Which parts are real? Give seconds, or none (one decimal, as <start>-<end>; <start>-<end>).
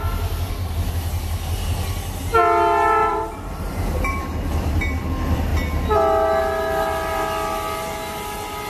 0.0-3.0; 5.1-8.7